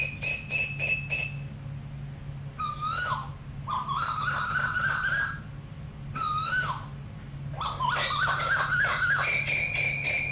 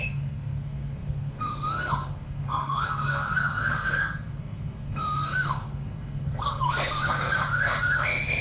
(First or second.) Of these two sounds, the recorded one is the first